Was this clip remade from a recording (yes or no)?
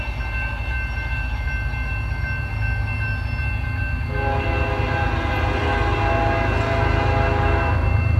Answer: no